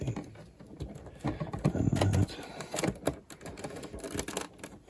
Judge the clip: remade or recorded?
recorded